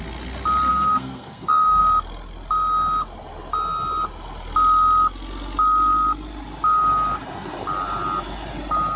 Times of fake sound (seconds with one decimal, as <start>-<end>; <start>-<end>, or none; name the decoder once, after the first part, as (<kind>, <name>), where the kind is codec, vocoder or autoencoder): 0.7-1.8 (codec, SNAC)